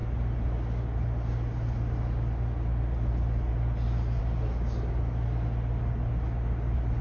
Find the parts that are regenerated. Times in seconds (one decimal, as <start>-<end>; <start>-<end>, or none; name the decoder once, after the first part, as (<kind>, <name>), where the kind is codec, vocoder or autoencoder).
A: none